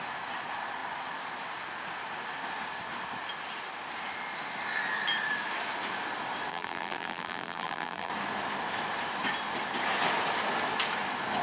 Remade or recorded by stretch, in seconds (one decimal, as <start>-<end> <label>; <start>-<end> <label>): 0.0-6.5 recorded; 6.5-8.1 remade; 8.1-11.4 recorded